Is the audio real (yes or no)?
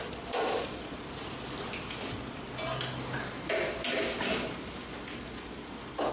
yes